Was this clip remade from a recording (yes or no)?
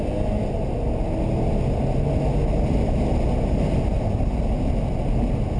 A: no